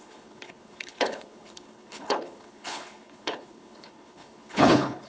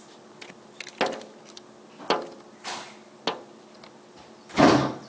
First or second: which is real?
second